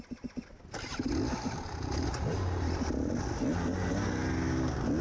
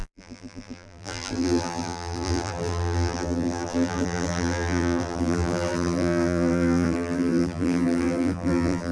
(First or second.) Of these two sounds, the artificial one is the second